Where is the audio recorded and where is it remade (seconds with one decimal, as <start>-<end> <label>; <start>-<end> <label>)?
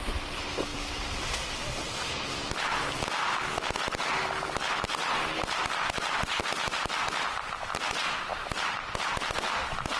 0.0-10.0 recorded